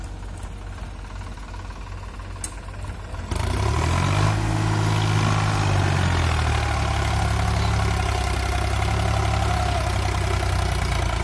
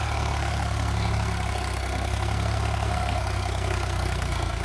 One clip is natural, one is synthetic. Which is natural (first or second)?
first